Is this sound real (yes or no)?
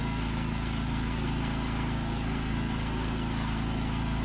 no